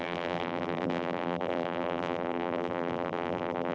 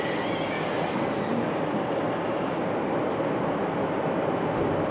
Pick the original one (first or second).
second